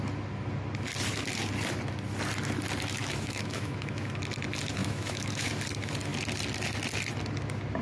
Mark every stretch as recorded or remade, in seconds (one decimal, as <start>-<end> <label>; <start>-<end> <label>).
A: 0.0-3.0 recorded; 3.0-4.2 remade; 4.2-4.8 recorded; 4.8-5.5 remade; 5.5-7.8 recorded